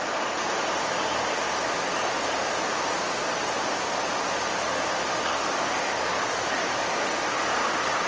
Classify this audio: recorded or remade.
recorded